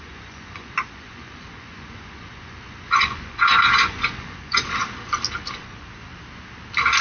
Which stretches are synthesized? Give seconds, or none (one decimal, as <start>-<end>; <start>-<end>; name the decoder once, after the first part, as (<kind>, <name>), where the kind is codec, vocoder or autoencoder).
0.0-4.8 (vocoder, Vocos); 5.6-6.1